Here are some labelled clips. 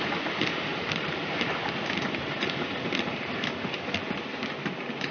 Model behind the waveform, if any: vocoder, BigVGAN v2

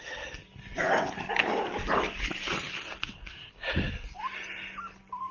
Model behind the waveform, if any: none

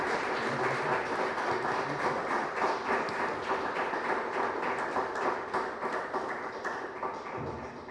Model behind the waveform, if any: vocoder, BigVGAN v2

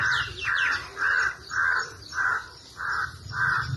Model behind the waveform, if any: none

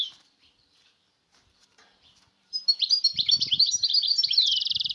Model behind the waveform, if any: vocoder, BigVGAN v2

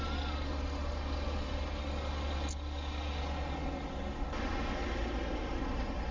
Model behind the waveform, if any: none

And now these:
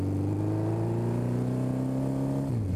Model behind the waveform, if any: none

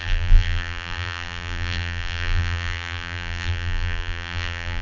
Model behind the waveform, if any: vocoder, BigVGAN v2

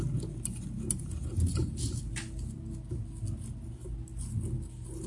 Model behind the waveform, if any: none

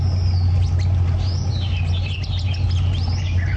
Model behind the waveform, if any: none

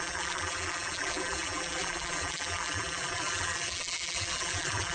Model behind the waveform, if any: vocoder, BigVGAN v2